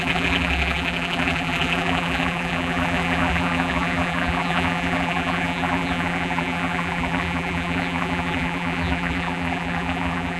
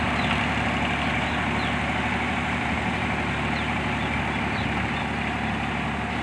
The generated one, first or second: first